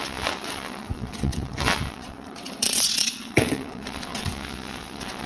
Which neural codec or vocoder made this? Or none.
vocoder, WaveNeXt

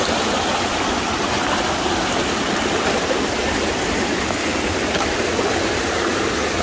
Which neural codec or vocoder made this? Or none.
none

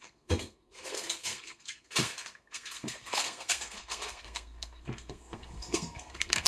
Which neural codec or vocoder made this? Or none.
codec, SNAC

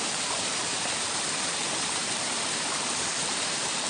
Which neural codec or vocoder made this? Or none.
vocoder, BigVGAN v2